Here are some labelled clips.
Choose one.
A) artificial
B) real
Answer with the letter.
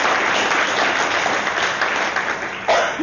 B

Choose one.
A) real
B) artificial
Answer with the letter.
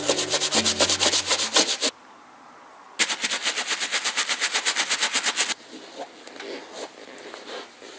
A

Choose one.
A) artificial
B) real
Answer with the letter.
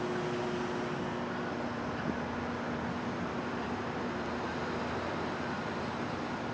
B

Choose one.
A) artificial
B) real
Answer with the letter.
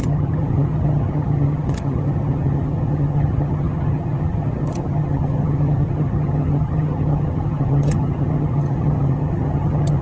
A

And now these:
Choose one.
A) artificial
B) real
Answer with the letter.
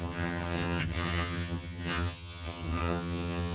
A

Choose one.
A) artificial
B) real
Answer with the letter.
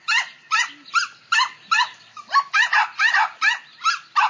B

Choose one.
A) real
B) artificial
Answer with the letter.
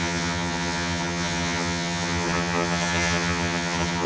B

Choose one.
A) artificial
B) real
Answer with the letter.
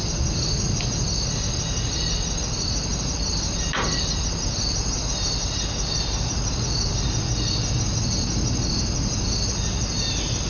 B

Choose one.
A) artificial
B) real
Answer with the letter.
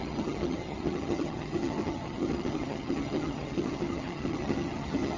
A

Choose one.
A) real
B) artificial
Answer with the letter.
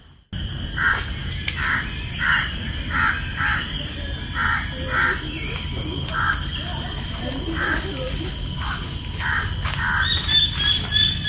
A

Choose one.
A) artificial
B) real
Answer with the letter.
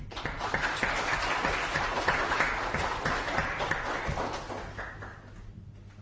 B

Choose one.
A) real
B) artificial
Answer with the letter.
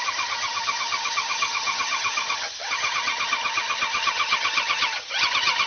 B